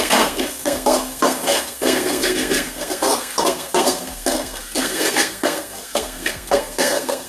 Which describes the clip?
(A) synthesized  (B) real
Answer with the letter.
A